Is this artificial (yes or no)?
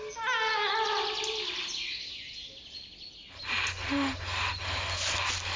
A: no